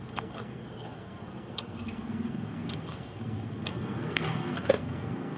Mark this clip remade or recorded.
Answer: remade